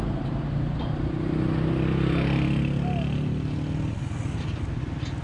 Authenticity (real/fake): real